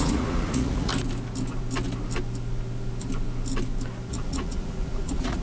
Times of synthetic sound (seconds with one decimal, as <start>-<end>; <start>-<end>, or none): 0.0-0.9; 4.1-5.4